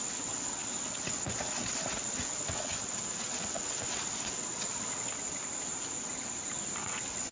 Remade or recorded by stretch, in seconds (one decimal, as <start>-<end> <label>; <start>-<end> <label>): 0.0-5.1 remade; 5.1-6.8 recorded; 6.8-7.3 remade